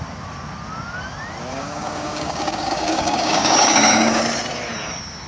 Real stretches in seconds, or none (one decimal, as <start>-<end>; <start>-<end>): 0.0-1.5; 4.2-5.3